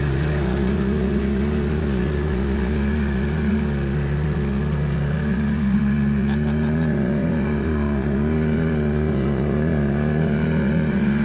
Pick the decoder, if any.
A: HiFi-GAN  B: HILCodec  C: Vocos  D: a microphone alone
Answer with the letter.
C